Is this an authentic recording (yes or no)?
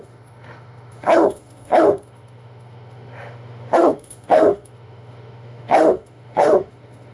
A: no